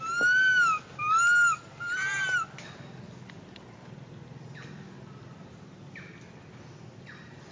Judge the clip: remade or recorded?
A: recorded